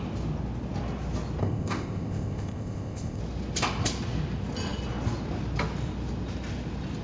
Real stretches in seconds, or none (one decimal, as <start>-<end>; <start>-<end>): 0.0-1.4; 3.2-7.0

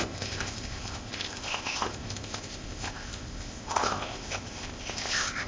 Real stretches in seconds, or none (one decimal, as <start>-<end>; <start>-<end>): none

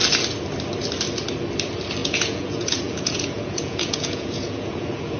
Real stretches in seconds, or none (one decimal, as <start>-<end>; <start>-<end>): 0.0-2.0

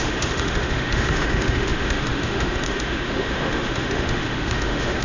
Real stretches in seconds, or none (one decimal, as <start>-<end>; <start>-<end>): none

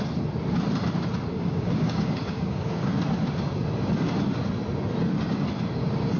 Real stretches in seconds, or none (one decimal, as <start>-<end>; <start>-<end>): 0.0-1.3; 2.9-6.2

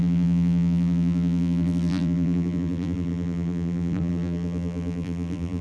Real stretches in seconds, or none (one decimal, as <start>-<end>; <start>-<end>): none

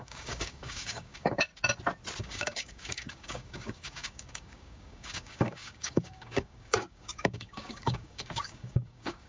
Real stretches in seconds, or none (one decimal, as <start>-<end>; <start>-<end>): 1.5-2.2